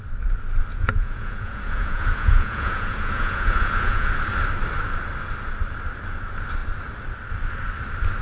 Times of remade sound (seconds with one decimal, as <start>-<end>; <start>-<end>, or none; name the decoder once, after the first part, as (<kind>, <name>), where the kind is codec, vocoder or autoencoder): 0.7-4.1 (vocoder, Vocos)